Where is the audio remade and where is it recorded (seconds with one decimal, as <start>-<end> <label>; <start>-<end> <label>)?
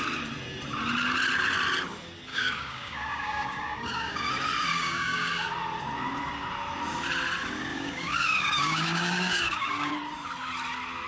0.0-2.3 recorded; 2.3-4.3 remade; 4.3-4.7 recorded; 4.7-5.3 remade; 5.3-7.7 recorded; 7.7-9.9 remade; 9.9-11.1 recorded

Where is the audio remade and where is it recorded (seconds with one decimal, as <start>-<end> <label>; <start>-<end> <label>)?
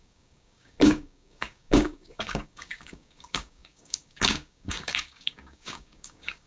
0.0-6.5 remade